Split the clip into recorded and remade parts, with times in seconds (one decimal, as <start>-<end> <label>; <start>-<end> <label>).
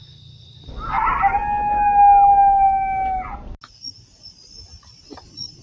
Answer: 0.0-5.6 recorded